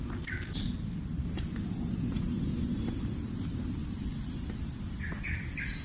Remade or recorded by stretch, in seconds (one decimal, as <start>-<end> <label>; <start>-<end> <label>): 0.0-1.1 recorded; 1.1-2.2 remade; 2.2-3.8 recorded; 3.8-4.8 remade; 4.8-5.8 recorded